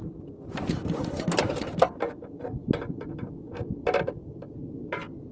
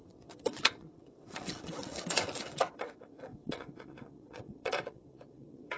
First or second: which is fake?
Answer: second